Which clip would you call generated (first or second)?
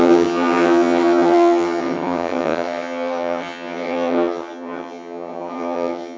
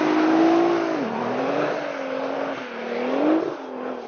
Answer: first